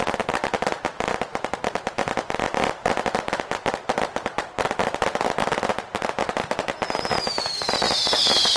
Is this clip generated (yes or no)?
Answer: no